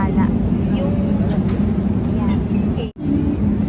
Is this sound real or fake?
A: real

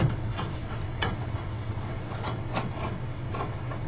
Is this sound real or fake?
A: fake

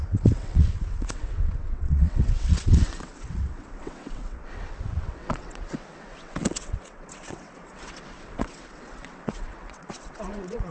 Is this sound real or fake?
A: fake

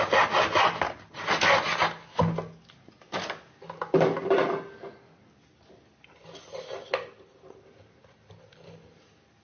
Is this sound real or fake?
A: real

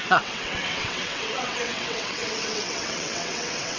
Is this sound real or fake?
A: fake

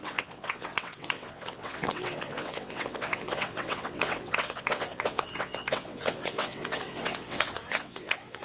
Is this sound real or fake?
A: fake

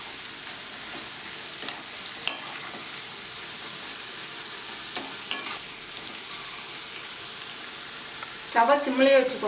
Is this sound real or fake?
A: real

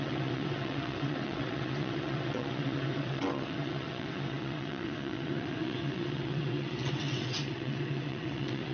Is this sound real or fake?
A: fake